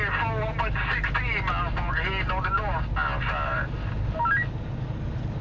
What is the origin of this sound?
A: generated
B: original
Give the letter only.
B